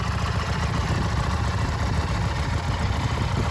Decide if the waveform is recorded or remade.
recorded